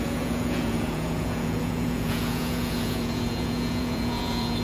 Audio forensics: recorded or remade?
remade